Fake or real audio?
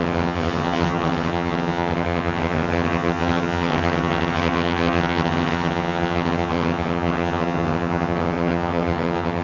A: fake